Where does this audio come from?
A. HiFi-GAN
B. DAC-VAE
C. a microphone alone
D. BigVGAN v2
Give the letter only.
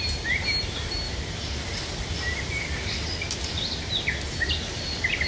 C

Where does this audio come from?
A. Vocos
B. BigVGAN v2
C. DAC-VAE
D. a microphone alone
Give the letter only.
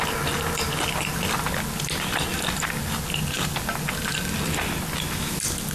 D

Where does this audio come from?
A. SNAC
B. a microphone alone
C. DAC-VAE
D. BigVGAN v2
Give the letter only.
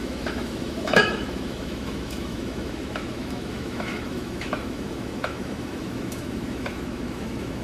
C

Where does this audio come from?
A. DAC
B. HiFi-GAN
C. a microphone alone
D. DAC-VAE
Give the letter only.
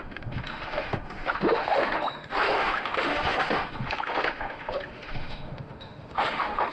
D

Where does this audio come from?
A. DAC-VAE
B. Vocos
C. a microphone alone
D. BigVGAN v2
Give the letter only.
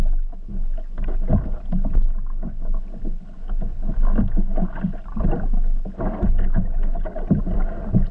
C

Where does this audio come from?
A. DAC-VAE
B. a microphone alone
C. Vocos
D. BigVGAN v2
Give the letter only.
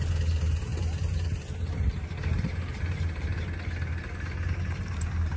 B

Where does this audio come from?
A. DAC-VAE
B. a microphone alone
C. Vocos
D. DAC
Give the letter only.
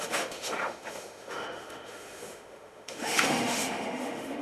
A